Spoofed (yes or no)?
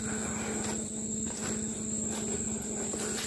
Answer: no